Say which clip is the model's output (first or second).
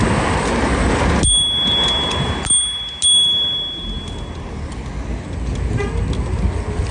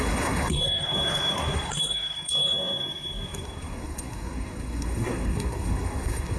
second